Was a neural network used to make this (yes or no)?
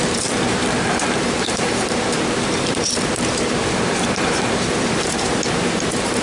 yes